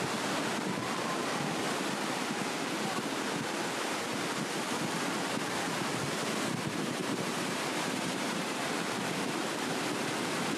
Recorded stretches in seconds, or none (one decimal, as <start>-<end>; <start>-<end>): 0.0-7.0; 8.6-10.6